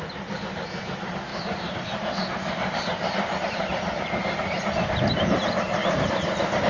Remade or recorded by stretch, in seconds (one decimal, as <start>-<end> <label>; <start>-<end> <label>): 0.0-1.3 recorded; 1.3-4.7 remade; 4.7-6.7 recorded